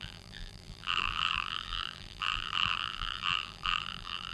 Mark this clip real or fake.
fake